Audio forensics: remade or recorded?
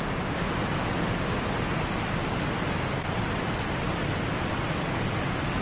recorded